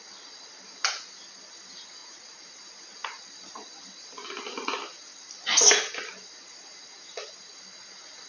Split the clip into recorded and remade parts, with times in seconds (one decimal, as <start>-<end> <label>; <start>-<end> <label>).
0.0-2.0 recorded; 2.0-2.6 remade; 2.6-8.3 recorded